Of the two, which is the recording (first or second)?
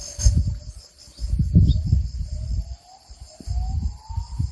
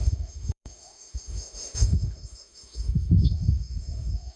first